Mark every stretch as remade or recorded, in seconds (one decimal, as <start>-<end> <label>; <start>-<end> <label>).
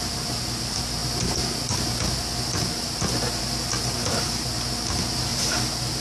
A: 0.0-6.0 recorded